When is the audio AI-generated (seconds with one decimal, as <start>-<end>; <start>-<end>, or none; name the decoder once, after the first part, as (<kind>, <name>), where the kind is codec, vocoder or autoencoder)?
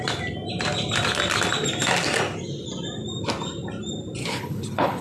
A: 4.2-5.0 (codec, HILCodec)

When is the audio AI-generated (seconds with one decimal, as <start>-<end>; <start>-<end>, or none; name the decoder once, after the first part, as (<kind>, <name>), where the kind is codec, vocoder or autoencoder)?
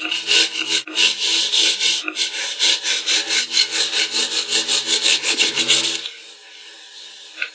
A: 5.1-5.6 (codec, HILCodec)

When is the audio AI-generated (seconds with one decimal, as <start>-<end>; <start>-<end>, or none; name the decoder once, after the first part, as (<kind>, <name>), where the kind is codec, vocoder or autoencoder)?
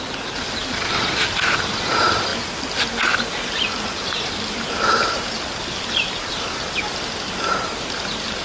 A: none